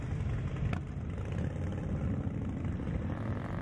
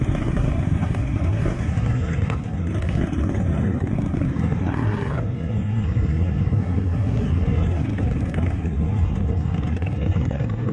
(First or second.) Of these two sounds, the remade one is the second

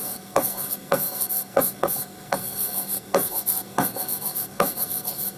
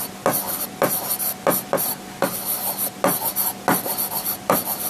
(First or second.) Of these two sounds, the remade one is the first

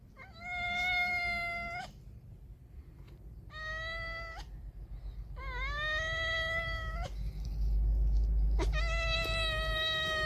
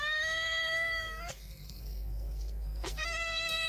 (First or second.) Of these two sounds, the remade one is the second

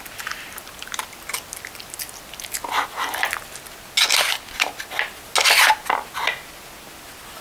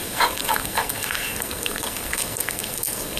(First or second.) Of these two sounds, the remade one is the second